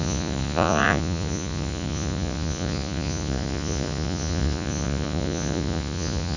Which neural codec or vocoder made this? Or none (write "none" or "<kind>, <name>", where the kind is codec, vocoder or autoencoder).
vocoder, Vocos